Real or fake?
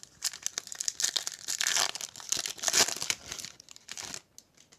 real